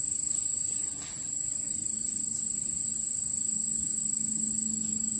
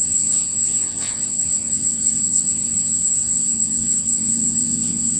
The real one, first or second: first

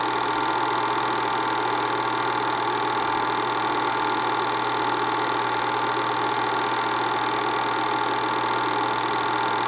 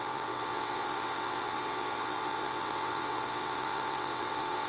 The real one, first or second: first